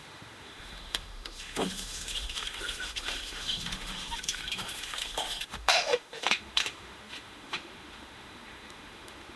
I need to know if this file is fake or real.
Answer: fake